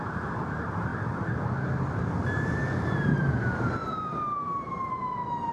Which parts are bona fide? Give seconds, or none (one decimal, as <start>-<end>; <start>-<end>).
0.0-2.6; 3.1-3.8; 5.0-5.5